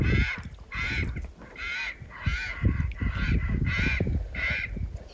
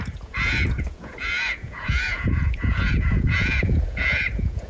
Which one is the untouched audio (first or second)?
first